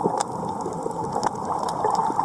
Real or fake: real